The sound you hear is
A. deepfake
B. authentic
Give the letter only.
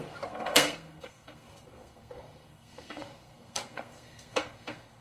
A